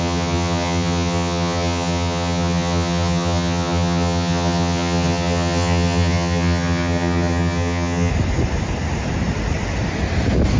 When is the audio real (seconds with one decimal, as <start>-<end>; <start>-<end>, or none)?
8.1-10.6